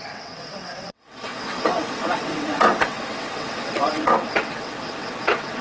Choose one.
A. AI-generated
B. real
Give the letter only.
A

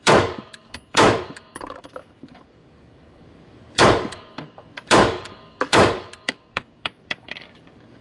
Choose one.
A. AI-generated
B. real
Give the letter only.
A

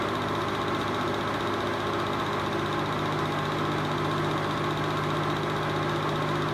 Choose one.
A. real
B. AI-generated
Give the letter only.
A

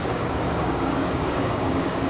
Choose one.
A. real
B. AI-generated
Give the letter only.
B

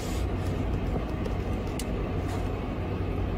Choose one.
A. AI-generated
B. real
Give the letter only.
B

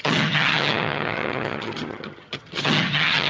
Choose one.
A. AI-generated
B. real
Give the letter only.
A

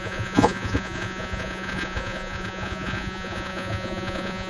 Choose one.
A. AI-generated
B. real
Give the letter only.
A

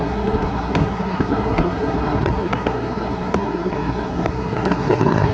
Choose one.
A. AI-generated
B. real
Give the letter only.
A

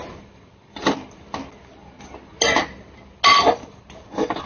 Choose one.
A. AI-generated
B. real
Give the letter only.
B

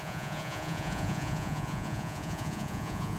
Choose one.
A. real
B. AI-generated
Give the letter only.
B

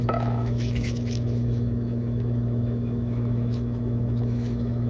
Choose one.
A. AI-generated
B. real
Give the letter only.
A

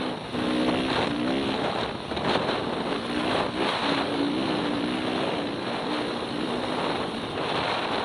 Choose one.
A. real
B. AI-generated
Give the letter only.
A